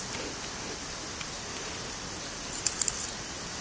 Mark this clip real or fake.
real